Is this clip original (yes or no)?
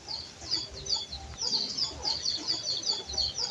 yes